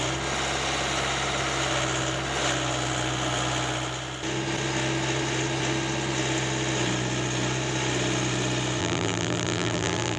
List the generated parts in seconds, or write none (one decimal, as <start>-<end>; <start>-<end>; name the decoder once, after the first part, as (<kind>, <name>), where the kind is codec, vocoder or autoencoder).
8.8-10.2 (vocoder, BigVGAN v2)